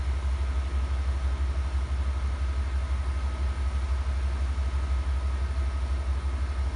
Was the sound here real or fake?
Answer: real